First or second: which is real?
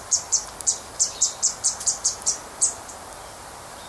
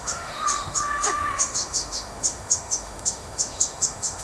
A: first